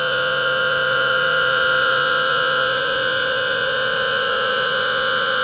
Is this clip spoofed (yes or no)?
yes